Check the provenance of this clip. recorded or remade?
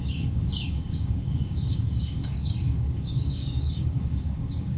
remade